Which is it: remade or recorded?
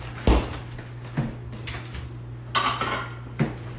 recorded